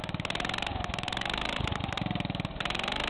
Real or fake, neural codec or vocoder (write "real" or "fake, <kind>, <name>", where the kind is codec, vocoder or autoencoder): real